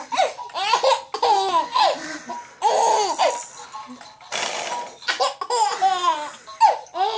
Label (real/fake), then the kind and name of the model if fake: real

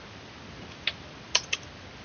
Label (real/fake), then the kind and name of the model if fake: real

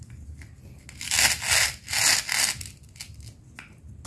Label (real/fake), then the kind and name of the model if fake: real